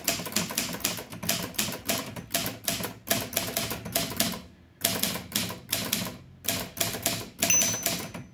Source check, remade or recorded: recorded